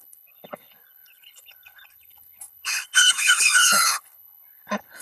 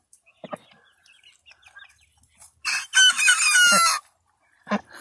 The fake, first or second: first